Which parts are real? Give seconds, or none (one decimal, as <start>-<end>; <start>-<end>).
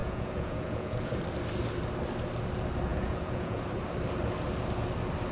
1.1-2.9; 3.6-5.3